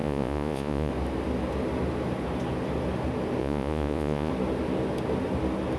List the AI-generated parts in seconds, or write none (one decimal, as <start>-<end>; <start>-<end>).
0.0-0.9; 3.4-4.3